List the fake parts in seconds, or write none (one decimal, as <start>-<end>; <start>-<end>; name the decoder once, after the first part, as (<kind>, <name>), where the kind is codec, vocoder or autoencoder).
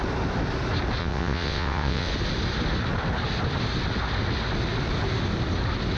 1.0-2.1 (vocoder, WaveNeXt)